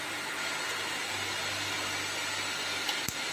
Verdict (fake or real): real